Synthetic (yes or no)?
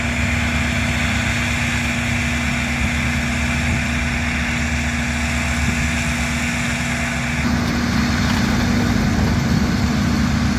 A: no